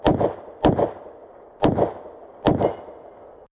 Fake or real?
real